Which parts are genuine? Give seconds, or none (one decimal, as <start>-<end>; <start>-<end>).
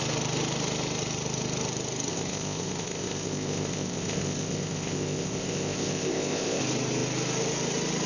0.0-2.1; 6.6-8.1